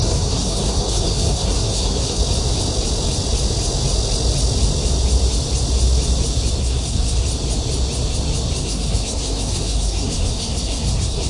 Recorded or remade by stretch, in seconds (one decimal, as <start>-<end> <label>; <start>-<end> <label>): 0.0-2.2 remade; 2.2-6.6 recorded; 6.6-7.3 remade; 7.3-8.6 recorded; 8.6-11.3 remade